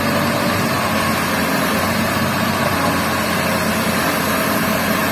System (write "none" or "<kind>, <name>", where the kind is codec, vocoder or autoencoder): none